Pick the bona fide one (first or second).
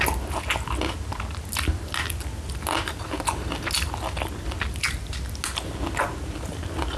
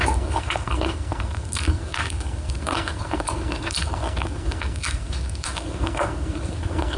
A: first